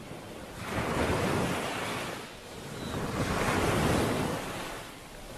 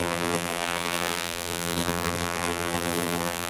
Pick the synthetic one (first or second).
second